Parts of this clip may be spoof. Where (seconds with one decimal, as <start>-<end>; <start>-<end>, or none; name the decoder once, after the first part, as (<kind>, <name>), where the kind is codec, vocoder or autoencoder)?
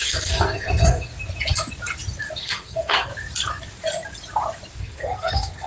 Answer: 0.0-1.1 (codec, SNAC); 2.4-3.1; 4.8-5.7